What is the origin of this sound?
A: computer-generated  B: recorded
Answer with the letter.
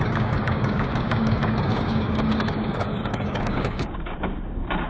A